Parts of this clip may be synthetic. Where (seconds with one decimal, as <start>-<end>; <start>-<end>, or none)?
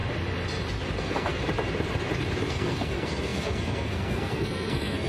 1.0-1.4; 2.5-5.1